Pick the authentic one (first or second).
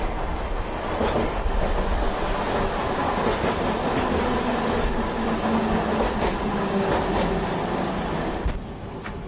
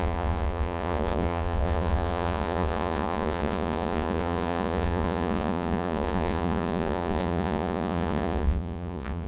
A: first